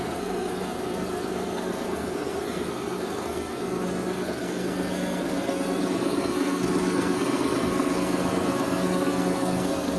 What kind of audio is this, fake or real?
fake